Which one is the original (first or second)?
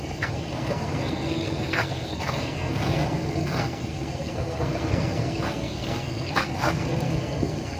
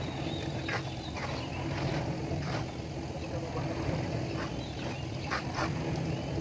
second